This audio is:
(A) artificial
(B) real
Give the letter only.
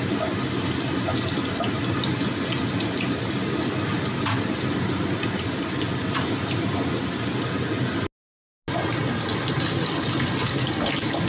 B